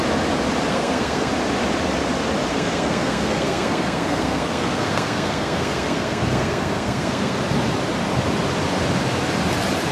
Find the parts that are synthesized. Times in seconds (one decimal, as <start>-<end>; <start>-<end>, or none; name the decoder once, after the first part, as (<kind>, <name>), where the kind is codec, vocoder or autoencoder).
0.7-1.3 (codec, SNAC); 2.5-7.4